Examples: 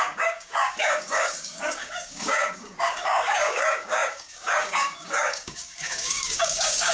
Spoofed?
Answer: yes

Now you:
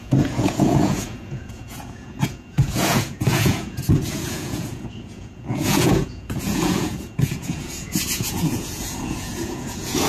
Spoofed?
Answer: yes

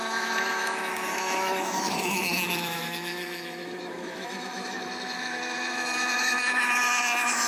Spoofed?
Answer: yes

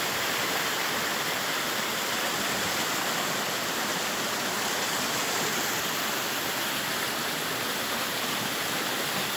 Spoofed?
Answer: no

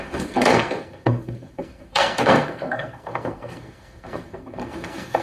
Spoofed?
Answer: yes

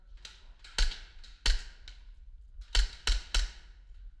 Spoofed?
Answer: no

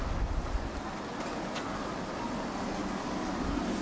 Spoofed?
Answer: no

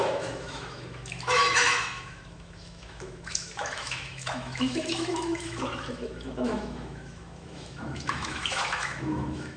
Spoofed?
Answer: yes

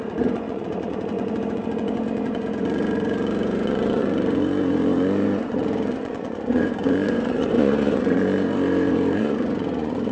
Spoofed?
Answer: yes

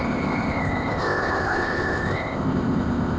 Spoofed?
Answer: yes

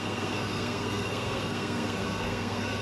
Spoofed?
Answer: yes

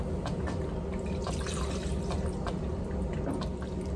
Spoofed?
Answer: no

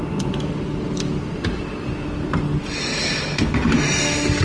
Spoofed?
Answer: no